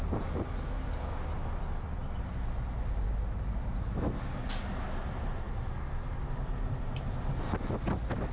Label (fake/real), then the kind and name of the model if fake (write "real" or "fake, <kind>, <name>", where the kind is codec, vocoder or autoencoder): real